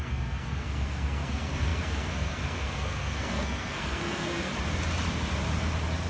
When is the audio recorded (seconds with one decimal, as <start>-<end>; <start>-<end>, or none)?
4.5-6.1